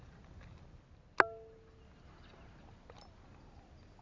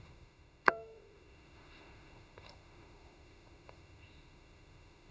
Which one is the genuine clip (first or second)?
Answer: first